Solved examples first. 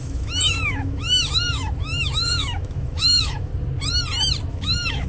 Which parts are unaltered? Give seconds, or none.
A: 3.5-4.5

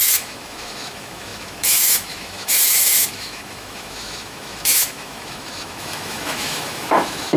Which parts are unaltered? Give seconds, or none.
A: none

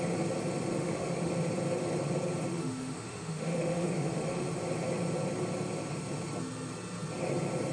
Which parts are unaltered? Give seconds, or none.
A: 0.0-0.7; 1.3-2.5; 4.6-7.7